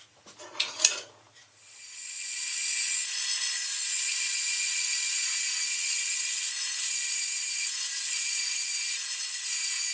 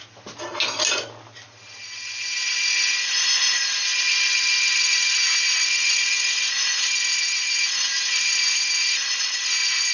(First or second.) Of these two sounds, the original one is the second